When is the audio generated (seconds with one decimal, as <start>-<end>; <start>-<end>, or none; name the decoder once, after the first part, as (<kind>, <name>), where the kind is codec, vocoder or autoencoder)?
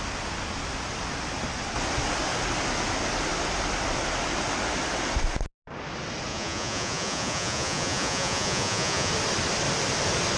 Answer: 6.3-9.1 (vocoder, Vocos)